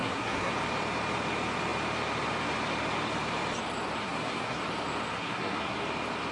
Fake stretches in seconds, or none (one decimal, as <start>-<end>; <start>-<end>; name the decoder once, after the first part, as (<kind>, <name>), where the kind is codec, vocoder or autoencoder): 0.0-0.5 (codec, SNAC); 4.0-4.6; 5.1-5.8